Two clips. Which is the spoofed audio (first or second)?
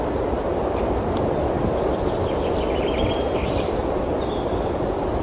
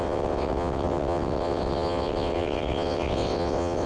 second